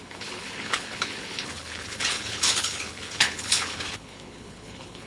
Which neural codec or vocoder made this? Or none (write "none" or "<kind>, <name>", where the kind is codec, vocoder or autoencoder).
codec, HILCodec